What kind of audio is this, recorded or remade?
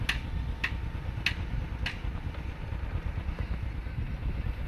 recorded